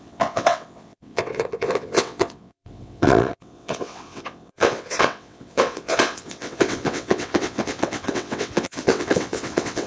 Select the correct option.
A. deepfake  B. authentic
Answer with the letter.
A